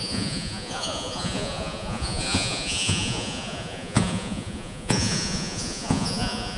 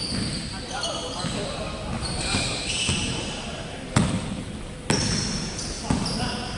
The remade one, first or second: first